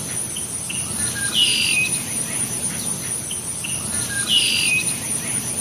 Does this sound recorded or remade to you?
recorded